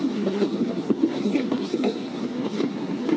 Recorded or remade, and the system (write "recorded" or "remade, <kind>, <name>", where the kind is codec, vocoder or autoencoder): remade, codec, SNAC